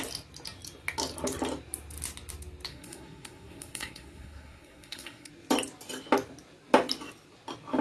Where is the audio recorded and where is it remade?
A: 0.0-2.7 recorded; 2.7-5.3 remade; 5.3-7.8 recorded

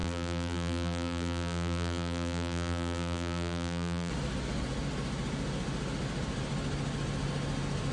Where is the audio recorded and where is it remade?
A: 0.0-4.1 remade; 4.1-7.9 recorded

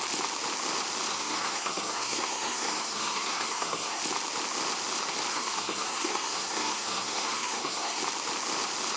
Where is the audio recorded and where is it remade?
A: 0.0-1.1 recorded; 1.1-4.0 remade; 4.0-5.3 recorded; 5.3-8.0 remade; 8.0-9.0 recorded

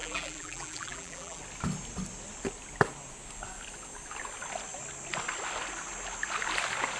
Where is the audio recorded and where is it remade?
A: 0.0-1.4 remade; 1.4-7.0 recorded

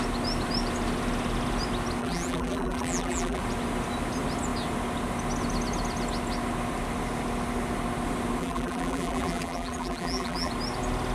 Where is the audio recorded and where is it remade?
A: 0.0-2.0 recorded; 2.0-3.4 remade; 3.4-8.4 recorded; 8.4-10.5 remade; 10.5-11.1 recorded

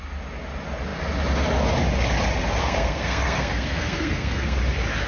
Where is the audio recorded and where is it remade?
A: 0.0-2.6 recorded; 2.6-4.6 remade; 4.6-5.1 recorded